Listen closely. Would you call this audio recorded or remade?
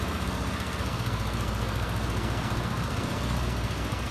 remade